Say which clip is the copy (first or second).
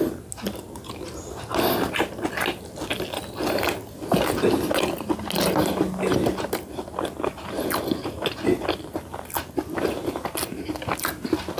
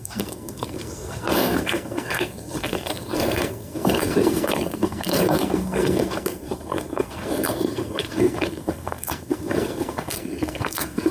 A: second